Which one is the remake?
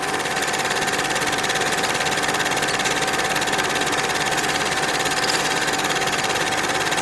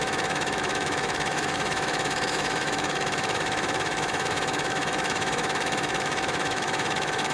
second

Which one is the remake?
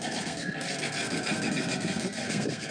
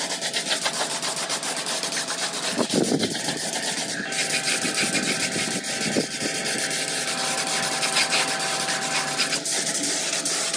first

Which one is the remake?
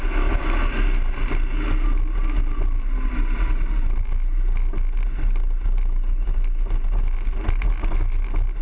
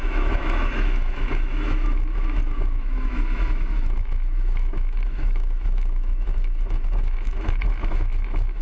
second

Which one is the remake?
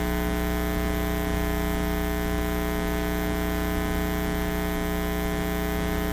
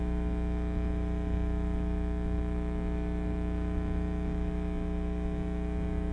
second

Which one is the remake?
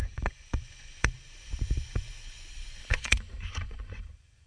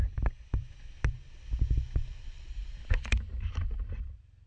first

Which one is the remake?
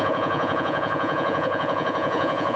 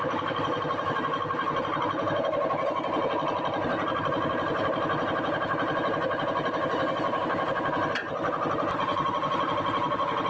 first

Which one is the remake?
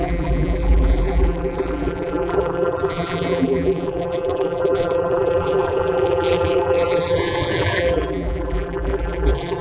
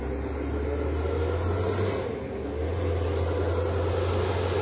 first